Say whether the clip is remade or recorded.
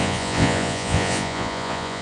remade